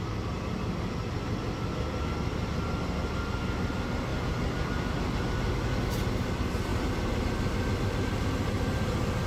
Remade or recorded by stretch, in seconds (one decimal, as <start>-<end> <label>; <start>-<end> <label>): 0.0-9.3 recorded